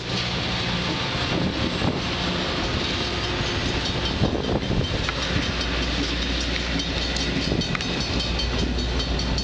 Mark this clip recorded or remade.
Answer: recorded